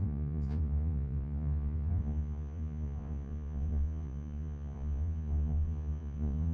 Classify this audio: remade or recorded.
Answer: remade